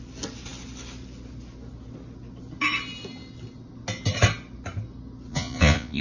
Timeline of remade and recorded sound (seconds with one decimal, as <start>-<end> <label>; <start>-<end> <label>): 0.0-5.3 recorded; 5.3-6.0 remade